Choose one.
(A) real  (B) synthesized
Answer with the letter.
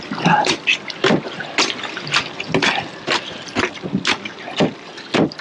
A